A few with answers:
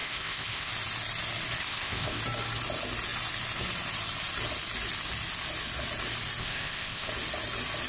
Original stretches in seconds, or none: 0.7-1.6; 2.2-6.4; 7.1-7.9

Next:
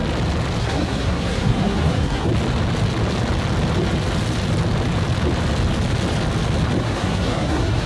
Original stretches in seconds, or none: 0.0-0.6; 2.3-6.8

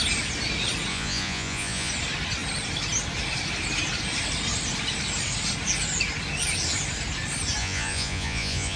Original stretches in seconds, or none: 0.0-0.9; 1.9-7.6

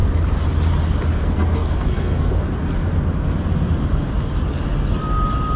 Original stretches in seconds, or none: 0.0-1.2; 2.3-5.6

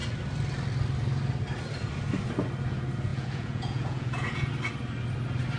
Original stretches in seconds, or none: 0.0-3.1; 4.5-5.6

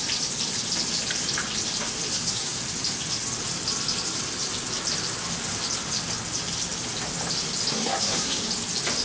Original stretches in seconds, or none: 0.0-2.1; 2.6-7.7; 8.4-9.0

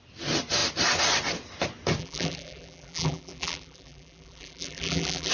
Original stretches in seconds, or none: 0.0-2.0

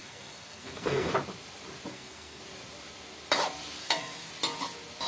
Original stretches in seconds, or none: 1.1-1.9; 2.4-3.8; 4.3-5.1